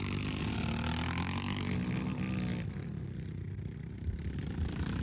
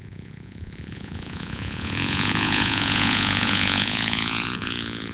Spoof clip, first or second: second